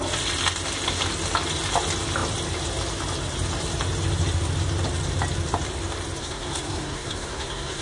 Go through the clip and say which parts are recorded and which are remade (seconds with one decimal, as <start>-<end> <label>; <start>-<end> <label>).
0.0-6.2 recorded; 6.2-7.8 remade